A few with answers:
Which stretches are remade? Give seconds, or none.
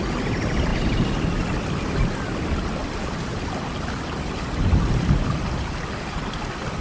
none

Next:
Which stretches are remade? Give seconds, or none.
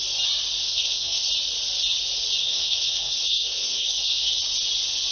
0.6-1.3 (codec, SNAC); 2.4-4.4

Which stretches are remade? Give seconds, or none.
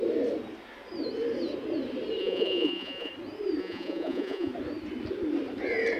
2.2-3.1 (vocoder, Vocos); 3.6-4.5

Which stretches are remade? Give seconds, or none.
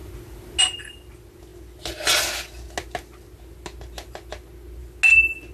none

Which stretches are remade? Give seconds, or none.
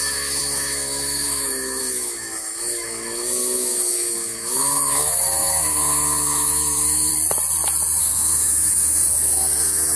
0.0-7.1 (autoencoder, DAC-VAE); 8.0-10.0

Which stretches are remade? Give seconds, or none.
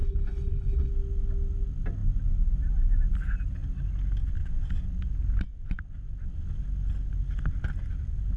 0.0-0.9 (codec, HILCodec)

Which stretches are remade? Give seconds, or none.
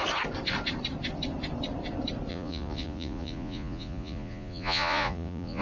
2.3-5.6 (vocoder, Vocos)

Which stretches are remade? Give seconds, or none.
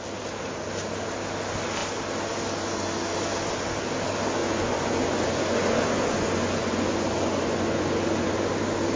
4.4-8.4 (vocoder, Vocos)